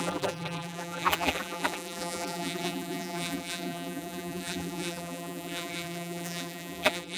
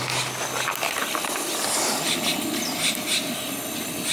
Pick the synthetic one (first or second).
first